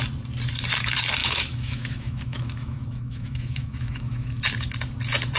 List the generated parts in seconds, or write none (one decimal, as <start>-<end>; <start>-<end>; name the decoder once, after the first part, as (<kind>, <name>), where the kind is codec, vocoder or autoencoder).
1.2-4.4 (autoencoder, DAC-VAE)